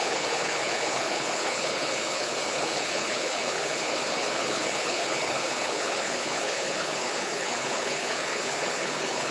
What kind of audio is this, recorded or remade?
remade